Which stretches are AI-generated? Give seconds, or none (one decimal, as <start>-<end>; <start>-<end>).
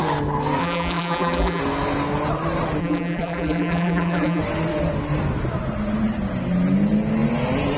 0.6-1.6; 2.8-4.4